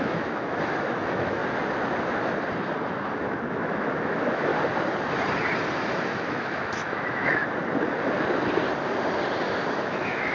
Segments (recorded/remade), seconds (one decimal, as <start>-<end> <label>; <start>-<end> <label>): 0.0-1.4 remade; 1.4-3.1 recorded; 3.1-4.5 remade; 4.5-6.0 recorded; 6.0-7.4 remade; 7.4-9.7 recorded; 9.7-10.3 remade